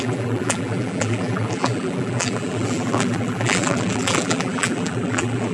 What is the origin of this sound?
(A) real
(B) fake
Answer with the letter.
B